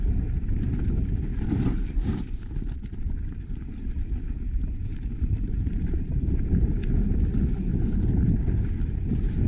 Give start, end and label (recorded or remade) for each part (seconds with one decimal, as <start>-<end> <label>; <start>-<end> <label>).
0.0-6.8 remade; 6.8-8.2 recorded; 8.2-9.5 remade